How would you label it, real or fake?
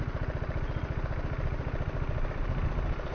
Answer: real